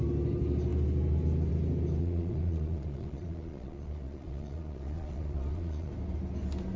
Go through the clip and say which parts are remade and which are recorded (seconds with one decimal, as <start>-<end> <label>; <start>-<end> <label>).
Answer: 0.0-2.0 recorded; 2.0-5.9 remade; 5.9-6.8 recorded